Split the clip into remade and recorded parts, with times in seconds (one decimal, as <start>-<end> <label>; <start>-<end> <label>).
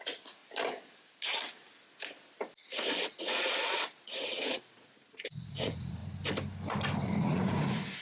0.0-0.4 remade; 0.4-3.2 recorded; 3.2-6.0 remade; 6.0-7.2 recorded; 7.2-8.0 remade